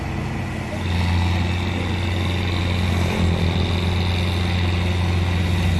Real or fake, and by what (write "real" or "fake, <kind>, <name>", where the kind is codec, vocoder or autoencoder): real